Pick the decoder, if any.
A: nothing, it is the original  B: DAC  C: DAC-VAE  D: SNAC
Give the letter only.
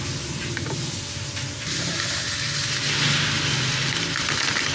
A